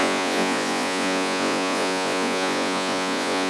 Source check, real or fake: fake